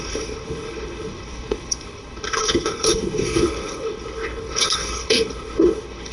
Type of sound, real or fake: fake